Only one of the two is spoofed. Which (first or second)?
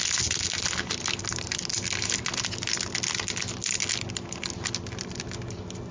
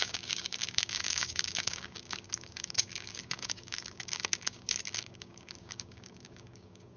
second